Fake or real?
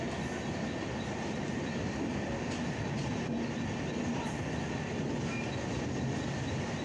real